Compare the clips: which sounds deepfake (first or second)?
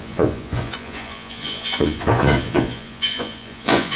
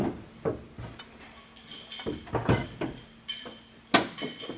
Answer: first